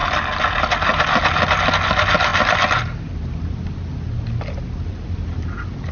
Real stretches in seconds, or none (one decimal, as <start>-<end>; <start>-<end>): 0.0-5.9